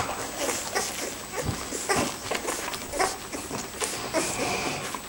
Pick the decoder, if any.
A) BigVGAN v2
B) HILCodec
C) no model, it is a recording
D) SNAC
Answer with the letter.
C